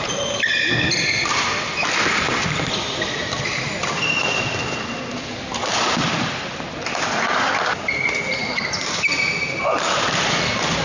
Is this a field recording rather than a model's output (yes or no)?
yes